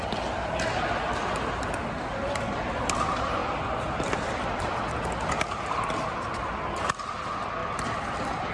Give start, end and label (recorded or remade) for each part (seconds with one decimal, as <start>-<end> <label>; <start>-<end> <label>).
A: 0.0-7.6 recorded; 7.6-8.5 remade